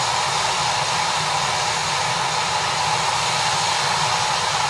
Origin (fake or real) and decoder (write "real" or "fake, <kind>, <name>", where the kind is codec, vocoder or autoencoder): real